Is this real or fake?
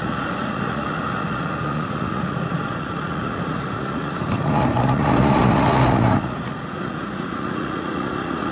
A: fake